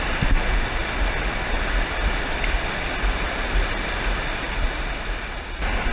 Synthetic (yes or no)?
no